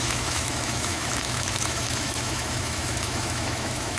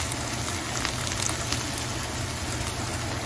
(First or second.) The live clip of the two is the second